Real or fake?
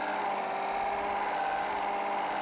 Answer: real